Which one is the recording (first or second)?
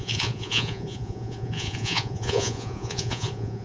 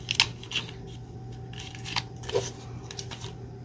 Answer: second